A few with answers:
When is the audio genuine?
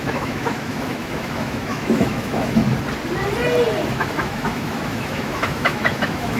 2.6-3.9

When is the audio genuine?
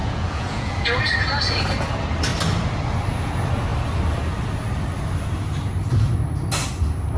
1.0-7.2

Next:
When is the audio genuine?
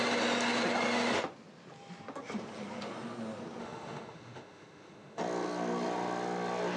0.0-3.6; 5.2-6.8